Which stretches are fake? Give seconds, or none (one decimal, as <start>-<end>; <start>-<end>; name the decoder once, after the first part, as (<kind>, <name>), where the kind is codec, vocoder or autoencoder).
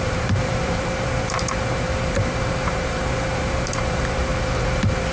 0.0-4.3 (vocoder, BigVGAN v2)